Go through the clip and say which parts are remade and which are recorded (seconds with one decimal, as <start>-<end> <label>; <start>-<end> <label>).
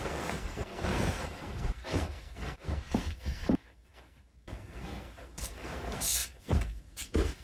0.0-7.4 remade